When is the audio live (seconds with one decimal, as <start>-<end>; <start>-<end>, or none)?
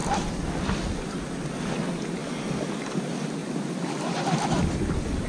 0.0-5.3